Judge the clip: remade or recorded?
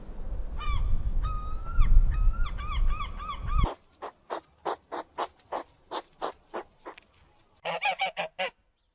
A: recorded